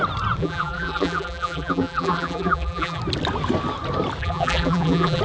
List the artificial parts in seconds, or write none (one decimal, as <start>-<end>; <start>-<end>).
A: 0.4-3.0; 4.2-5.2